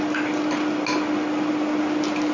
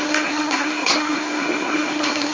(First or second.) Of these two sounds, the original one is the first